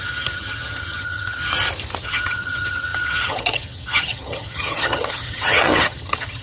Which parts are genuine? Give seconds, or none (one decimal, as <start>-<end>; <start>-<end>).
1.4-2.0